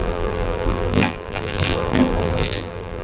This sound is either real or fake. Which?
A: fake